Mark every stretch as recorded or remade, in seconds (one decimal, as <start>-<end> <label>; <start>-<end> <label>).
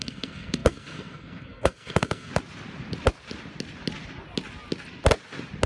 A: 0.0-2.3 remade; 2.3-5.7 recorded